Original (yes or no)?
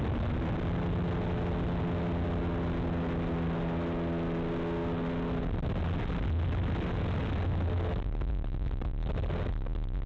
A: yes